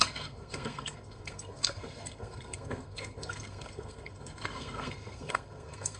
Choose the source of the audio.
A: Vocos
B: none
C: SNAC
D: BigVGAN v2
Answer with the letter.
C